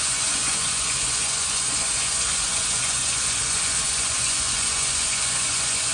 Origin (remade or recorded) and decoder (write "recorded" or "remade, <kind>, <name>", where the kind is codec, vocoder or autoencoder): remade, vocoder, Vocos